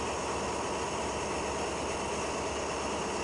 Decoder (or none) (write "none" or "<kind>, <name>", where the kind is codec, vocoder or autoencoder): none